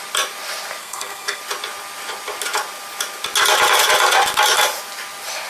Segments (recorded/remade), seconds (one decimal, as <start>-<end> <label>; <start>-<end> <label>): 0.0-0.8 recorded; 0.8-1.4 remade; 1.4-5.5 recorded